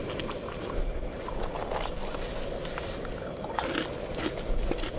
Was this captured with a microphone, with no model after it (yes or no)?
yes